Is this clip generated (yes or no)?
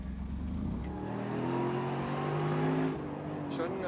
no